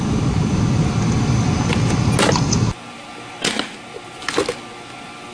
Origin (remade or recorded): recorded